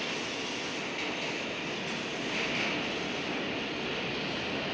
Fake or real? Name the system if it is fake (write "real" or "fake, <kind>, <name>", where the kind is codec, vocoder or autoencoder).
real